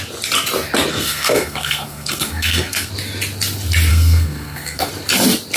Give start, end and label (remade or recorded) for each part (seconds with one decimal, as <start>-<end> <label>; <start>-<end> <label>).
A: 0.0-0.9 recorded; 0.9-2.9 remade; 2.9-3.9 recorded; 3.9-4.9 remade; 4.9-5.6 recorded